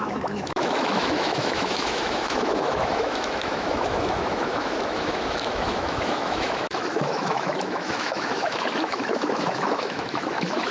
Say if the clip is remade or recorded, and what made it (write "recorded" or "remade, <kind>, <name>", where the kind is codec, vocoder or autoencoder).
remade, autoencoder, DAC-VAE